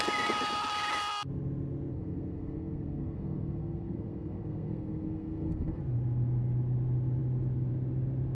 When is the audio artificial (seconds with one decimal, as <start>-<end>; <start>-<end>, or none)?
1.9-5.8